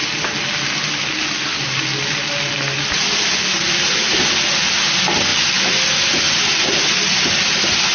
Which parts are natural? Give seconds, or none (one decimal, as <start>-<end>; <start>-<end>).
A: 0.0-7.9